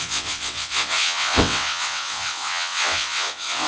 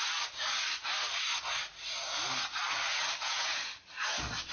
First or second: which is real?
second